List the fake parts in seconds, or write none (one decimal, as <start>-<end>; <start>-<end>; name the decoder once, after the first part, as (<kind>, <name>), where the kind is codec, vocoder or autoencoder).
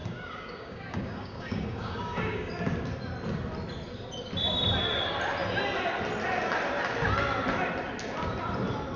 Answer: 0.0-2.5 (codec, DAC)